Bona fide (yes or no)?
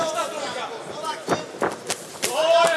yes